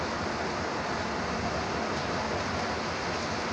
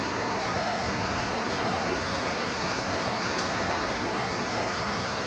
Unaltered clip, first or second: first